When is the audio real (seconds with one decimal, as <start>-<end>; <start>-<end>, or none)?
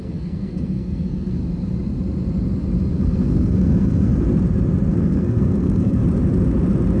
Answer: 1.4-2.9; 4.1-4.9; 6.0-7.0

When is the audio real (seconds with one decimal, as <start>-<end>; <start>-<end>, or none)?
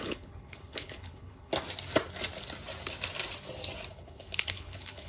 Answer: 1.5-3.9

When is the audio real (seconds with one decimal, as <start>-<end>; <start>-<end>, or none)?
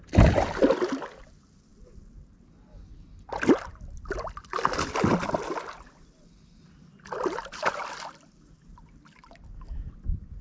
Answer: 0.0-10.4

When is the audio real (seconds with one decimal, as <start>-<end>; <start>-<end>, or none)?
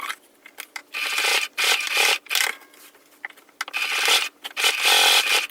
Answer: 0.0-5.5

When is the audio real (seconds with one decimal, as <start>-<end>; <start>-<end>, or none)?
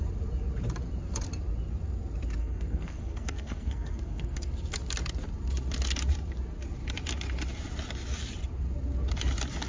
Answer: 0.0-2.4; 4.5-9.7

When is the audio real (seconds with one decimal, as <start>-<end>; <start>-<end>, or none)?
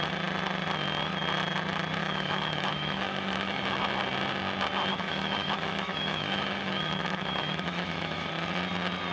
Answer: 0.0-2.0; 3.8-4.9; 8.3-9.1